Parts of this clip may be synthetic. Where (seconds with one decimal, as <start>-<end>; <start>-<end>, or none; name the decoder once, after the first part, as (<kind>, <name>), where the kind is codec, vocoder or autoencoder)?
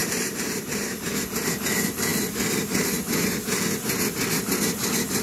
0.0-1.1 (vocoder, BigVGAN v2)